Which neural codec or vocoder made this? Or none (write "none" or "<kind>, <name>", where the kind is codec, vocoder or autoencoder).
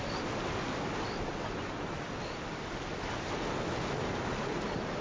none